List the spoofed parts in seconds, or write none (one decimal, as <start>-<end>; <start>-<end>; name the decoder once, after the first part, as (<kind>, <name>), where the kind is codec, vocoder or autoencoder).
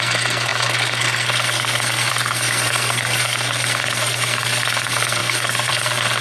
0.0-6.2 (codec, SNAC)